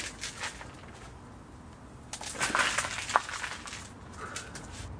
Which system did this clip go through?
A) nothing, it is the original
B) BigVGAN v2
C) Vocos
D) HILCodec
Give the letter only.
A